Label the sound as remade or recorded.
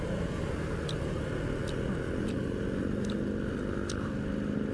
recorded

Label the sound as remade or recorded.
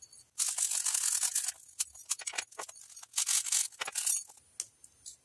recorded